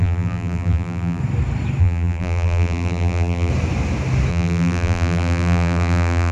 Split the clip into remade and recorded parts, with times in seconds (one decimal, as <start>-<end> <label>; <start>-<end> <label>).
0.0-1.2 remade; 1.2-1.8 recorded; 1.8-3.5 remade; 3.5-4.3 recorded; 4.3-6.3 remade